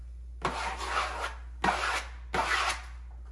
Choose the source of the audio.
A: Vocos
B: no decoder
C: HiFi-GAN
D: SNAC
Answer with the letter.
B